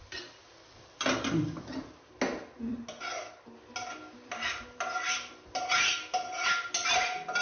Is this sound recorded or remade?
recorded